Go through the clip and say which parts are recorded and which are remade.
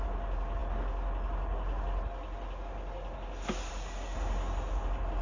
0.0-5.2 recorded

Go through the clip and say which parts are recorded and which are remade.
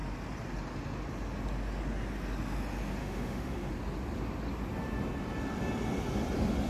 0.0-3.0 recorded; 3.0-3.7 remade; 3.7-6.7 recorded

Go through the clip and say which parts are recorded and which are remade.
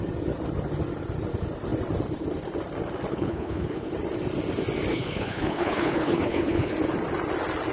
0.0-3.1 recorded; 3.1-3.9 remade; 3.9-4.9 recorded; 4.9-6.7 remade; 6.7-7.7 recorded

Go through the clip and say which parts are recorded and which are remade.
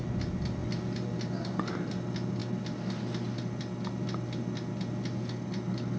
0.0-6.0 recorded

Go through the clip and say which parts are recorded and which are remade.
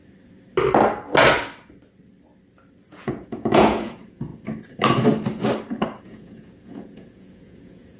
0.0-2.9 recorded; 2.9-4.3 remade; 4.3-6.0 recorded; 6.0-8.0 remade